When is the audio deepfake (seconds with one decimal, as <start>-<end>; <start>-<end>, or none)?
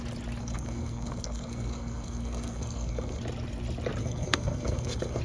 0.4-3.2; 4.0-5.2